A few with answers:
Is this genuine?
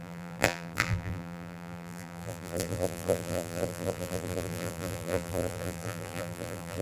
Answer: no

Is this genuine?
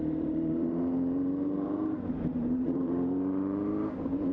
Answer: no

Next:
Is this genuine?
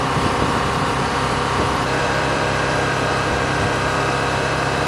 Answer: no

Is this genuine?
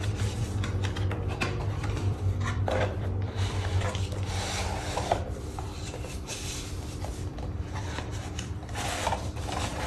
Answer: no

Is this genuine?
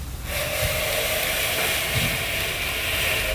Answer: yes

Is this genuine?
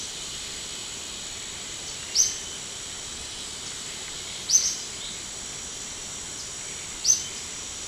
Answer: yes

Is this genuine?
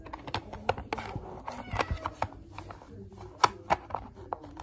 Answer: yes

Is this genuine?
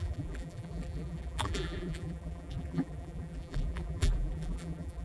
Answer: no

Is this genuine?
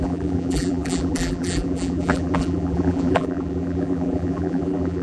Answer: no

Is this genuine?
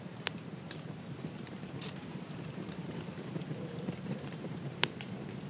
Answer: no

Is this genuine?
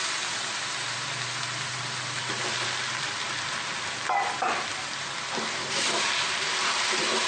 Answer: no